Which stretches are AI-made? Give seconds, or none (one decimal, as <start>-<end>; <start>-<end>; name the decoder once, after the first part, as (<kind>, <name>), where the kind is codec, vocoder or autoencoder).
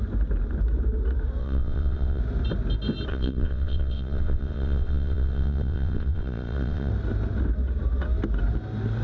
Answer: 1.4-2.2 (vocoder, WaveNeXt); 3.1-6.9